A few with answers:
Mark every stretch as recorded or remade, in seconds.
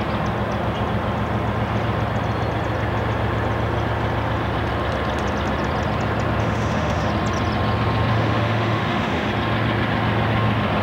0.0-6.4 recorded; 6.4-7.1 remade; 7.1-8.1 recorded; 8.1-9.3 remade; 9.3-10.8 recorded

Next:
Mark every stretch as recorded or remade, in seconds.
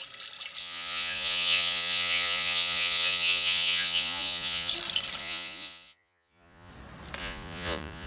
0.0-0.6 recorded; 0.6-4.7 remade; 4.7-5.2 recorded; 5.2-6.7 remade; 6.7-7.2 recorded; 7.2-8.1 remade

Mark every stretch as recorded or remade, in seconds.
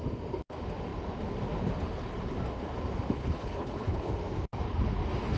0.0-3.2 recorded; 3.2-4.1 remade; 4.1-5.4 recorded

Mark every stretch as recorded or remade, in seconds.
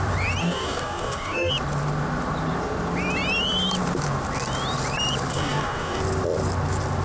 0.0-0.4 recorded; 0.4-1.5 remade; 1.5-5.3 recorded; 5.3-6.0 remade; 6.0-7.0 recorded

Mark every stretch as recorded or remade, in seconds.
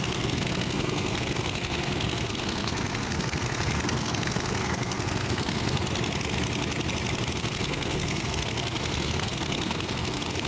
0.0-5.8 remade; 5.8-7.4 recorded; 7.4-10.5 remade